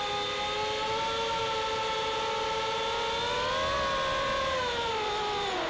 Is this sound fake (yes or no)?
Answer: no